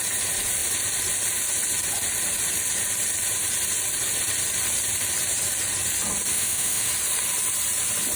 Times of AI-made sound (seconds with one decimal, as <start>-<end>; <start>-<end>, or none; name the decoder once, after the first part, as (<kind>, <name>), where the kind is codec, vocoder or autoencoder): 6.3-6.9 (autoencoder, DAC-VAE)